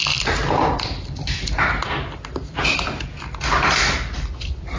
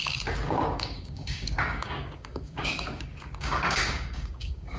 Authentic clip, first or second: first